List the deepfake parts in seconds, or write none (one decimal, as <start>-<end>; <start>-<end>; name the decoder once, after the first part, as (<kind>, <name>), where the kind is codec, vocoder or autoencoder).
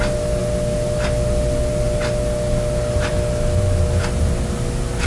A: none